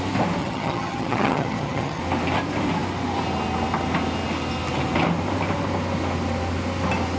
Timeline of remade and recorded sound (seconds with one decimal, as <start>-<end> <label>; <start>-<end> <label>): 0.0-0.4 recorded; 0.4-2.0 remade; 2.0-7.2 recorded

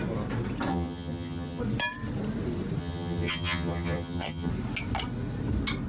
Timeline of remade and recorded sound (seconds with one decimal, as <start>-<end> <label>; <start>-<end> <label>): 0.0-0.7 recorded; 0.7-1.6 remade; 1.6-2.8 recorded; 2.8-4.5 remade; 4.5-5.9 recorded

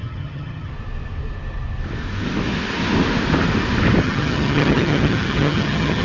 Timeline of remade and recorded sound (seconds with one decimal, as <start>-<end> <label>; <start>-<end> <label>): 0.0-0.7 remade; 0.7-4.0 recorded; 4.0-6.0 remade

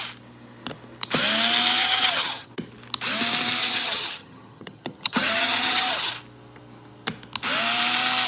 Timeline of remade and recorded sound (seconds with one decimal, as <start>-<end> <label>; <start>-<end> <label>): 0.0-1.8 recorded; 1.8-2.5 remade; 2.5-3.6 recorded; 3.6-6.1 remade; 6.1-8.3 recorded

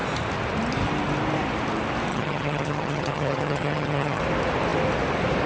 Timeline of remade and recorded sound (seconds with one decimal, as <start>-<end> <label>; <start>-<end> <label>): 0.0-2.1 recorded; 2.1-4.2 remade; 4.2-5.5 recorded

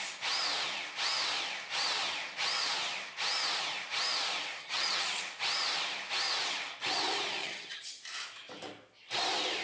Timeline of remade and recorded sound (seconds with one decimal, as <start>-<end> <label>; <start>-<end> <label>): 0.0-4.6 recorded; 4.6-5.2 remade; 5.2-7.4 recorded; 7.4-8.0 remade; 8.0-9.6 recorded

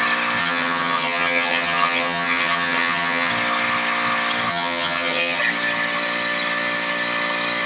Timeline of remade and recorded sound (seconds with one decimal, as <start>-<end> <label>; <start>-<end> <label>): 0.0-0.4 recorded; 0.4-3.3 remade; 3.3-4.5 recorded; 4.5-5.4 remade; 5.4-7.7 recorded